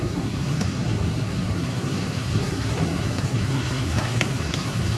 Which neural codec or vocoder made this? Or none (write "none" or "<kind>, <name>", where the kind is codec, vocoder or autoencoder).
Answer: codec, SNAC